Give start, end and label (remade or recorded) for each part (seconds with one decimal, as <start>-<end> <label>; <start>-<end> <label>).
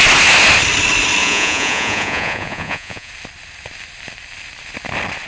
0.0-1.2 recorded; 1.2-3.1 remade; 3.1-5.3 recorded